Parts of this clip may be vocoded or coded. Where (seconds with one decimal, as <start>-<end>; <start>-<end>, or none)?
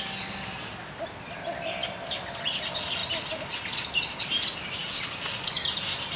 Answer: none